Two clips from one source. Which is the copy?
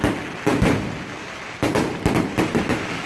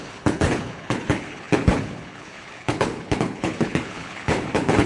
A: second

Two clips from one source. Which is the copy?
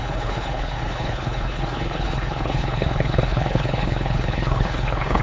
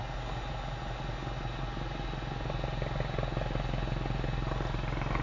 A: first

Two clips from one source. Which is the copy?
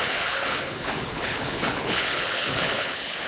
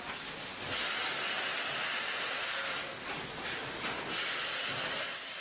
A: first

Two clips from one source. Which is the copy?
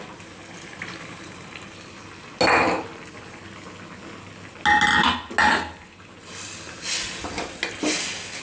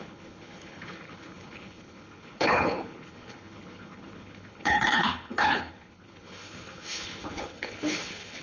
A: second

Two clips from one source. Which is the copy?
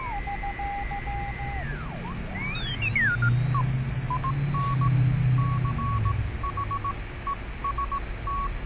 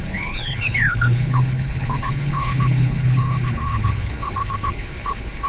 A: second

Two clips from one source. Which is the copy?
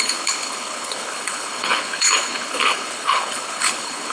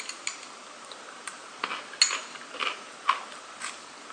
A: first